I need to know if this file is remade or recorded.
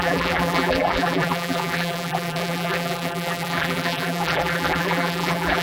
remade